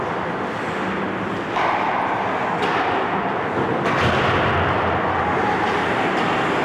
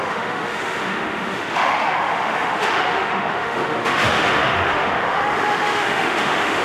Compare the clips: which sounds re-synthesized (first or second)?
second